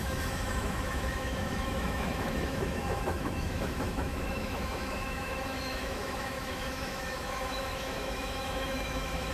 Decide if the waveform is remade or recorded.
remade